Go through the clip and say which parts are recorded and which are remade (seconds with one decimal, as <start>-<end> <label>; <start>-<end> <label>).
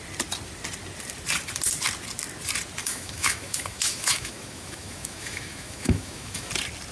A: 0.0-2.8 recorded; 2.8-6.5 remade; 6.5-6.9 recorded